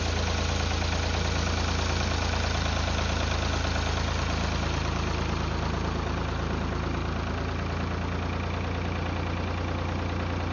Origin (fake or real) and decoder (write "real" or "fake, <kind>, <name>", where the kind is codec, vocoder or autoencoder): real